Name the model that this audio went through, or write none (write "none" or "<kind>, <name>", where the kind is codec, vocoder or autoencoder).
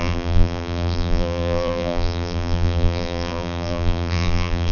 vocoder, BigVGAN v2